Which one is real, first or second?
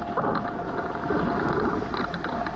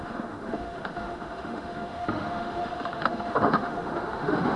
first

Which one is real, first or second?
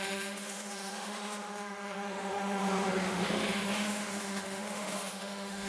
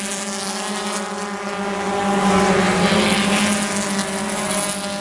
second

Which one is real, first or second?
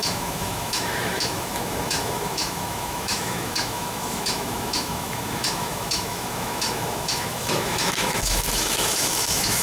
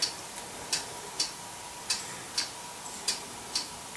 second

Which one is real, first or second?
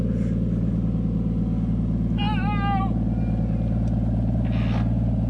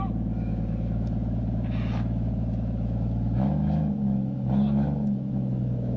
first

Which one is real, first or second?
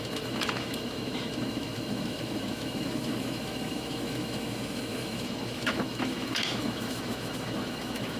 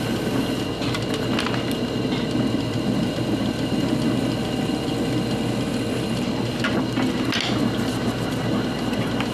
second